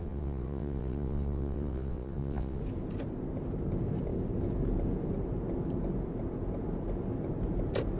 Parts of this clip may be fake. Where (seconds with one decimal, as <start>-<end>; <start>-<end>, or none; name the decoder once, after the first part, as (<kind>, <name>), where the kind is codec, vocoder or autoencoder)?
0.0-2.6 (vocoder, WaveNeXt)